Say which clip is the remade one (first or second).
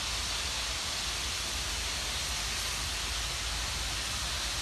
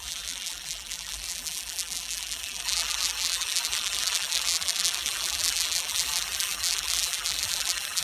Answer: second